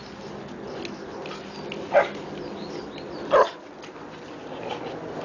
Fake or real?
real